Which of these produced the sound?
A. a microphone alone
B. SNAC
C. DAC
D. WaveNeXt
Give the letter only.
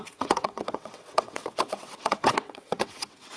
D